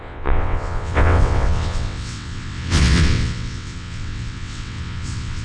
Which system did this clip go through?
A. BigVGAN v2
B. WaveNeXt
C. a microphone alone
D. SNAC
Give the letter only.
B